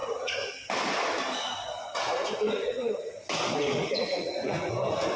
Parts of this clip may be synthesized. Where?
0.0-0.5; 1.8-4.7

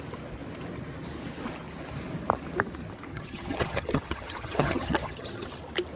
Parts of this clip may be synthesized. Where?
3.1-5.5

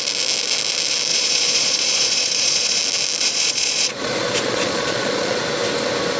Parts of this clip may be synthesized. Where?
1.1-2.8; 3.2-5.4